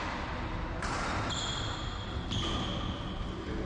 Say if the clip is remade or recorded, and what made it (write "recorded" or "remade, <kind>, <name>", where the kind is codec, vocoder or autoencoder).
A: recorded